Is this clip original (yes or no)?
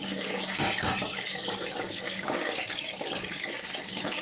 no